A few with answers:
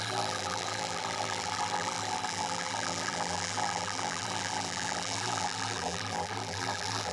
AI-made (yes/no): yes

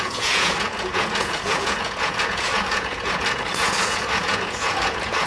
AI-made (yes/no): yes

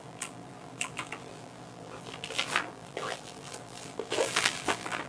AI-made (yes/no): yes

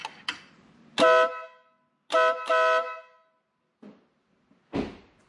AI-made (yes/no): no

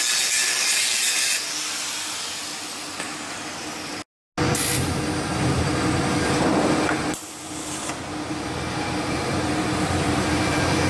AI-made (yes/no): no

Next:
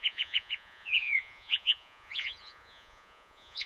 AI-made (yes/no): yes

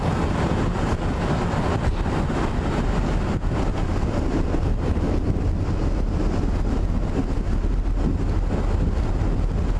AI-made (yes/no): no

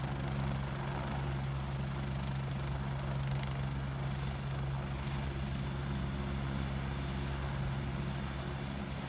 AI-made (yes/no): no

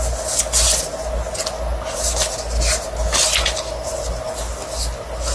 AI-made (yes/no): no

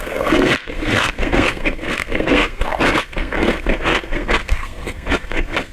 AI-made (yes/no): yes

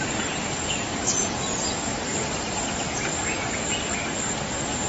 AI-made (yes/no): no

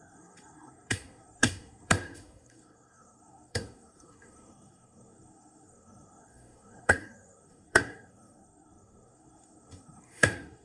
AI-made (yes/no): yes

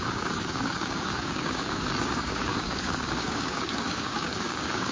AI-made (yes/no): yes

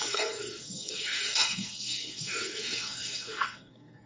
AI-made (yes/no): yes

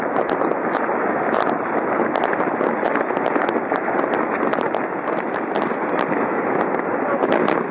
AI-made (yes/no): no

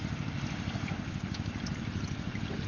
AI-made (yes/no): no